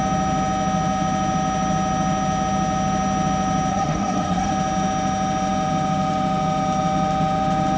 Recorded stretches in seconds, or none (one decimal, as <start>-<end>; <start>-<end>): 0.0-3.7; 4.5-7.8